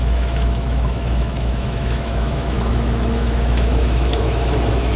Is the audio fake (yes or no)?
yes